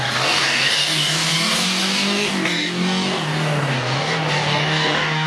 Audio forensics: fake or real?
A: fake